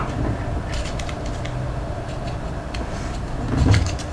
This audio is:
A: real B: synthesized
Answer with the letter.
A